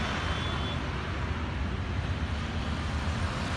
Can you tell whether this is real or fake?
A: real